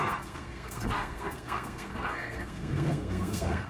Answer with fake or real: fake